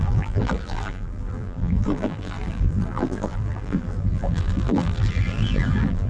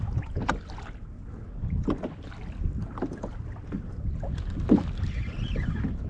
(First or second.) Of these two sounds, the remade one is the first